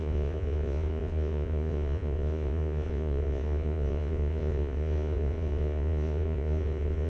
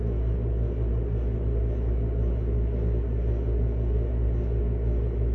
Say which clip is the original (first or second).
second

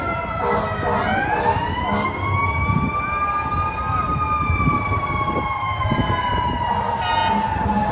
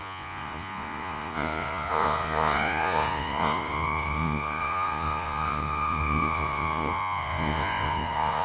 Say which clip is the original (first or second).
first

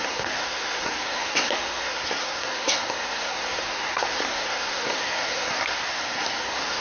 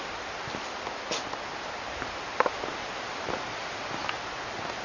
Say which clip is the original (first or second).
second